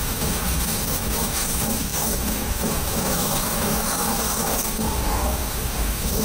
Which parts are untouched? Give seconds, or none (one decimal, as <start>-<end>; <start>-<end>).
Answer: none